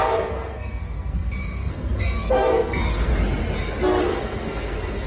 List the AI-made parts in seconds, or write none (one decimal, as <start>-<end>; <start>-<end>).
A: 0.0-3.1; 4.0-5.1